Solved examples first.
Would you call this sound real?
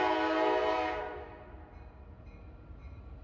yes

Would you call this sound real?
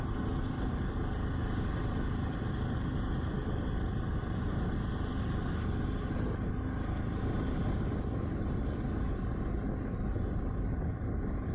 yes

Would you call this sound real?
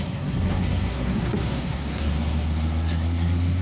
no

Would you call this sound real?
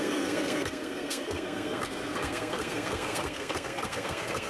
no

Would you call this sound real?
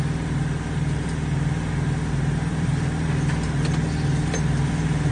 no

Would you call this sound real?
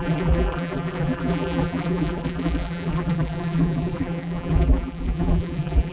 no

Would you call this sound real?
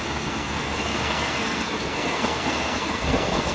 no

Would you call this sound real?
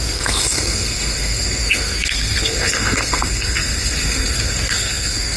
no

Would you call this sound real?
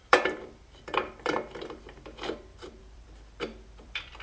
no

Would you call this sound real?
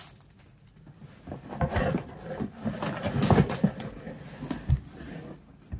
yes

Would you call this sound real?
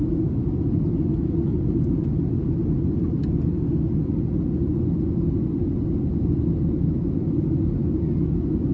yes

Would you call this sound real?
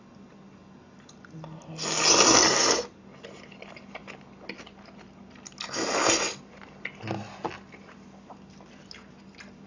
yes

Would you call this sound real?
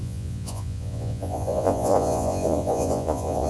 no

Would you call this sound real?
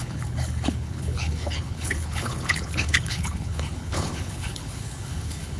no